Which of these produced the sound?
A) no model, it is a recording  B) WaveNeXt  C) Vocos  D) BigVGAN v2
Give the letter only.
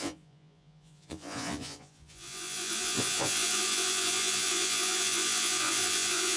C